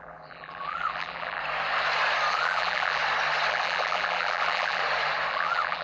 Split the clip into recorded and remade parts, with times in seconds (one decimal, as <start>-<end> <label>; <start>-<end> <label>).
0.0-1.4 remade; 1.4-2.3 recorded; 2.3-3.0 remade; 3.0-3.5 recorded; 3.5-4.8 remade; 4.8-5.3 recorded; 5.3-5.8 remade